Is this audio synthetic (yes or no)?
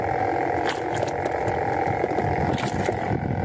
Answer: no